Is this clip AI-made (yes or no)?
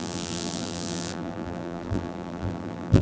yes